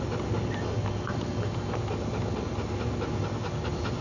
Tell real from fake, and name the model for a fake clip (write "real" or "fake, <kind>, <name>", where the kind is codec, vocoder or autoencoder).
real